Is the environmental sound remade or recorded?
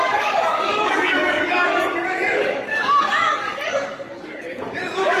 remade